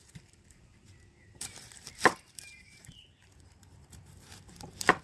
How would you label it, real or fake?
fake